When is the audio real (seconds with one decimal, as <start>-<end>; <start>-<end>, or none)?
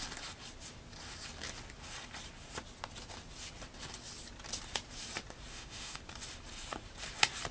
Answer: 0.0-5.5; 6.0-7.5